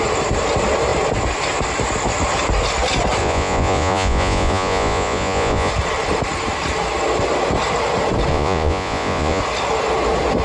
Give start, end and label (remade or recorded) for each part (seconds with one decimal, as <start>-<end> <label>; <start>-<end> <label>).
0.0-3.2 recorded; 3.2-5.7 remade; 5.7-8.3 recorded; 8.3-9.4 remade; 9.4-10.4 recorded